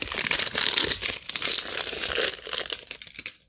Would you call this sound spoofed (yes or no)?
no